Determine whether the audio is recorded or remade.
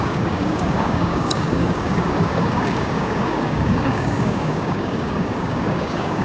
remade